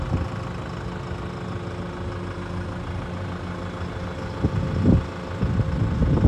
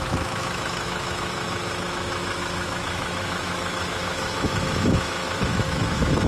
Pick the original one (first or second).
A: first